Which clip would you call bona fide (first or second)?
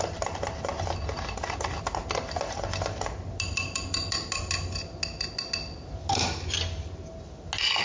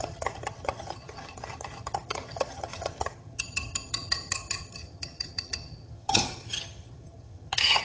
first